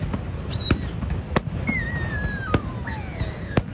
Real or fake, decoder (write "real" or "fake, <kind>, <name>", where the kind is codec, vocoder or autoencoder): real